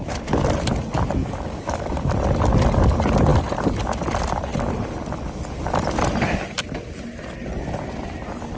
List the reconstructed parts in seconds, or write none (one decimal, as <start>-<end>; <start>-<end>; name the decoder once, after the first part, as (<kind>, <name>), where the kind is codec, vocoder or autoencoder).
1.2-2.1 (codec, DAC)